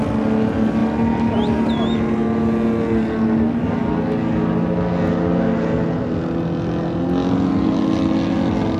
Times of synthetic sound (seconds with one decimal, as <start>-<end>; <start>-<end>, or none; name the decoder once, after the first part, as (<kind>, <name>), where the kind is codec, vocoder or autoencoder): none